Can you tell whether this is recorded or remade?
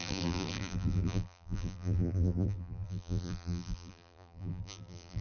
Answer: remade